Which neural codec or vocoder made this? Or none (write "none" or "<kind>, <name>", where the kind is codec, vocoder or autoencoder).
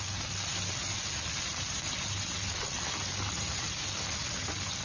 none